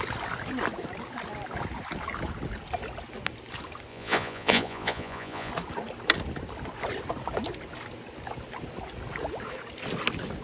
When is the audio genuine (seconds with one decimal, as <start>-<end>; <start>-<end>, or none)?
0.0-3.9; 5.5-10.4